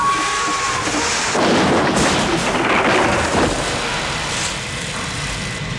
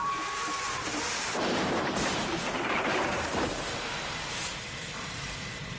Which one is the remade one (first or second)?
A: second